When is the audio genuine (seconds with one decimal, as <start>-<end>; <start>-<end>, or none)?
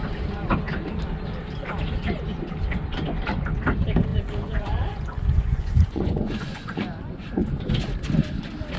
0.0-4.1; 7.7-8.8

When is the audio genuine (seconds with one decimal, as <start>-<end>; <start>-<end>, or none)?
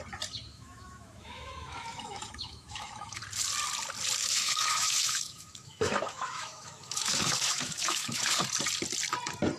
0.0-0.5; 3.2-4.2; 8.4-9.6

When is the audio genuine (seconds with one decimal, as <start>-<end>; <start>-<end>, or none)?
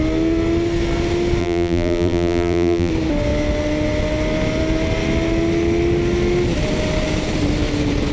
0.0-1.4; 2.9-8.1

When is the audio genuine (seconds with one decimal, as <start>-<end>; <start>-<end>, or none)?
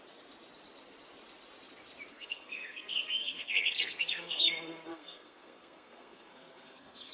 0.0-2.1; 4.5-4.9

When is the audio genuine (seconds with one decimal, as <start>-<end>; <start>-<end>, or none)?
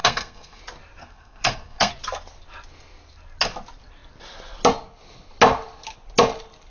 0.6-1.0; 1.9-6.7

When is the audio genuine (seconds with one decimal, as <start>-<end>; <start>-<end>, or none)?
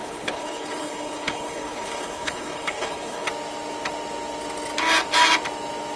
3.3-6.0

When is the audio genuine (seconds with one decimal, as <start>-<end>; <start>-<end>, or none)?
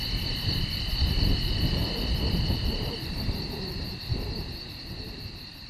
0.0-5.7